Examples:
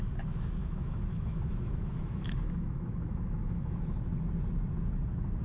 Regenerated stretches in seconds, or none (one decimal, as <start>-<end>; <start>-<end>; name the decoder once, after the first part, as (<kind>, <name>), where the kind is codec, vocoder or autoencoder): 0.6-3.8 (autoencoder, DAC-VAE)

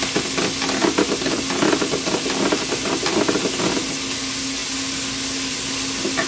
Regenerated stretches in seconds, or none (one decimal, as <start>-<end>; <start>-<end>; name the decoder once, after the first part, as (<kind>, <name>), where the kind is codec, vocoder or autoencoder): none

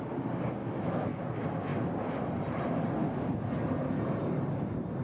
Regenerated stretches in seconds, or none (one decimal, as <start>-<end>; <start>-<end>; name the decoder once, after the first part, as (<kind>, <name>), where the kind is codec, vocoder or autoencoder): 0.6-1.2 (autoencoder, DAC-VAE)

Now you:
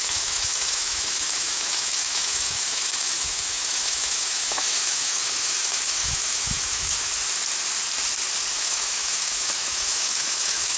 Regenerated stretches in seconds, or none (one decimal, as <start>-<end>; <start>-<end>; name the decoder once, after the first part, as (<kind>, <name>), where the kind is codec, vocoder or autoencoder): 0.0-7.1 (autoencoder, DAC-VAE); 8.5-10.8